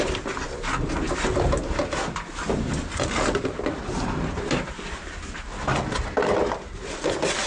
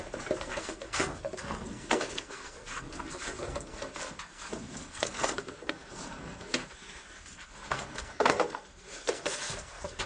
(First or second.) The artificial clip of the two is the second